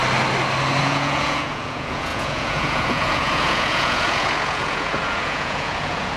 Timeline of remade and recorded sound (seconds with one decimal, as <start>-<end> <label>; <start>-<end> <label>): 0.0-0.8 recorded; 0.8-6.2 remade